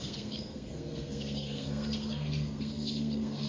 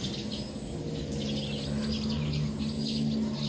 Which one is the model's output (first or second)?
first